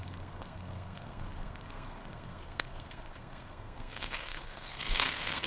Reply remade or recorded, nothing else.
remade